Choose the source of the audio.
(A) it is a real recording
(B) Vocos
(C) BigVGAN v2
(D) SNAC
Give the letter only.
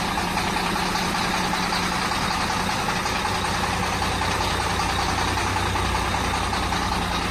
A